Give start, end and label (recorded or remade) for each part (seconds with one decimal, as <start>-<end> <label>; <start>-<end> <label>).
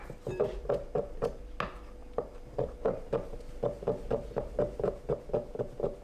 0.0-6.0 recorded